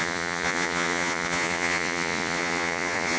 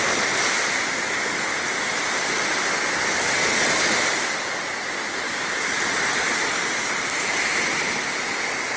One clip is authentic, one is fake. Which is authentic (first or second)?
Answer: second